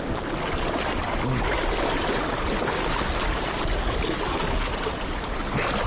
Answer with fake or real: real